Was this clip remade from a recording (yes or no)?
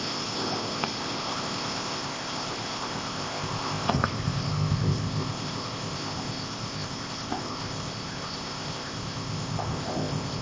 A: yes